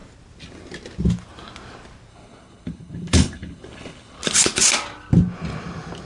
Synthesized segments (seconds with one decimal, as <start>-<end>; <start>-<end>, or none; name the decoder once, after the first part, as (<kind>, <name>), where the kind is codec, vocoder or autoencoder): 2.1-4.2 (codec, HILCodec)